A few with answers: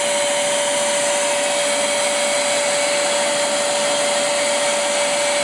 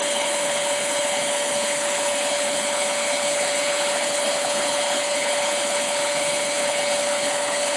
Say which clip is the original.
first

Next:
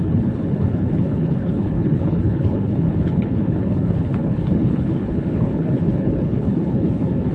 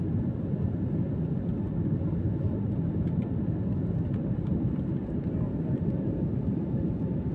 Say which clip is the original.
second